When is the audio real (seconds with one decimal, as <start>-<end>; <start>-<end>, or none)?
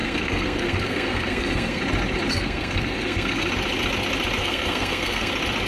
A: 1.8-2.3; 3.5-4.4; 5.3-5.7